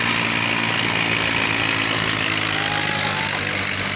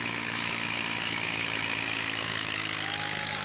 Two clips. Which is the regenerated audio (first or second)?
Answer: second